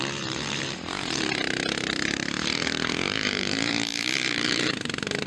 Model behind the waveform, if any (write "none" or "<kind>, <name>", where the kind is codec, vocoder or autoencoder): vocoder, BigVGAN v2